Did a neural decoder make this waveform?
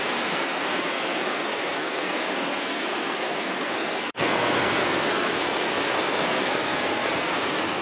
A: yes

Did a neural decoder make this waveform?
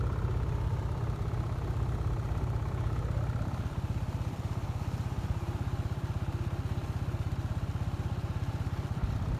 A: yes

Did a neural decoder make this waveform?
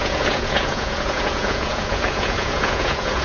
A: yes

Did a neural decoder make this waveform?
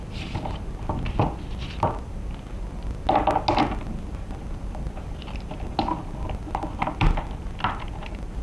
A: no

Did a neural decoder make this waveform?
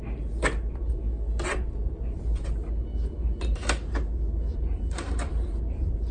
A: no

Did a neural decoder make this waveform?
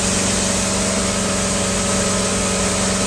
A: no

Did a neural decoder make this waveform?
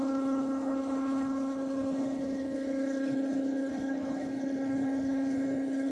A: yes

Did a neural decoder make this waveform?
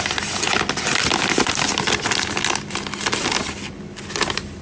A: no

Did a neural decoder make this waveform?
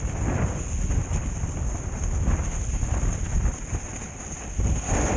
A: no